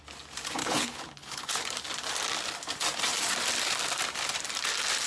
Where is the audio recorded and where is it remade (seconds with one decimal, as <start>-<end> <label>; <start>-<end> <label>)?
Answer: 0.0-0.6 recorded; 0.6-1.5 remade; 1.5-5.1 recorded